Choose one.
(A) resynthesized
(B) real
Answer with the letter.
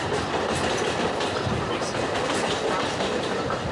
B